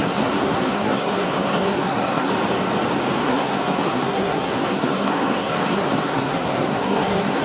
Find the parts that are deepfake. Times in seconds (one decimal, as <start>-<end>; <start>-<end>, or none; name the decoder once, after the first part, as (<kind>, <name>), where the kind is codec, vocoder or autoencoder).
0.0-2.3 (codec, SNAC); 3.2-7.4